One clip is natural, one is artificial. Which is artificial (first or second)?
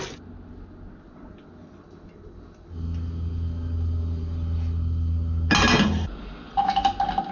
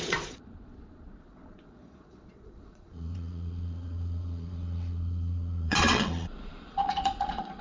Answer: second